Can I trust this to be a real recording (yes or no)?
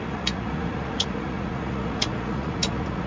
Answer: no